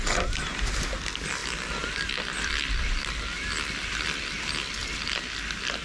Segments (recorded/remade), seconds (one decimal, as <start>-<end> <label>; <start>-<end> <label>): 0.0-5.8 recorded